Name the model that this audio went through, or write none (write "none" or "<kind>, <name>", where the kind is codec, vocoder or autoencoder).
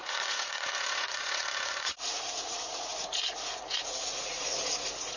vocoder, Vocos